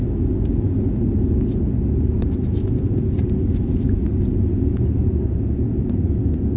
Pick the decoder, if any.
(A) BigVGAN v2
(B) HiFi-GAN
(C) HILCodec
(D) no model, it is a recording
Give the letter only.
D